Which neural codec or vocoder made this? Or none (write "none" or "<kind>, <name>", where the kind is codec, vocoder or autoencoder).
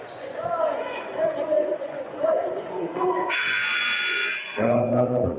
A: vocoder, Vocos